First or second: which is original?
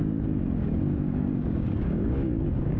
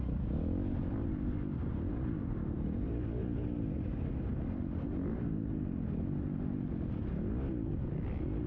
second